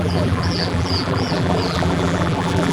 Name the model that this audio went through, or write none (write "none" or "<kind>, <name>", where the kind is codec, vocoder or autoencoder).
vocoder, BigVGAN v2